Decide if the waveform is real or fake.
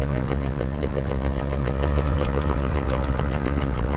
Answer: fake